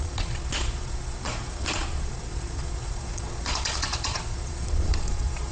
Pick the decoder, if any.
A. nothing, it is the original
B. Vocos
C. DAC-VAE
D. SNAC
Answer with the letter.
B